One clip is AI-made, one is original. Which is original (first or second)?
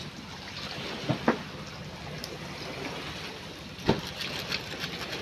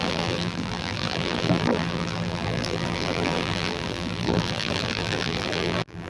first